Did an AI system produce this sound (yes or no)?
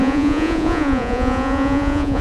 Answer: yes